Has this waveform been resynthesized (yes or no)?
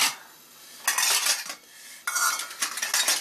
no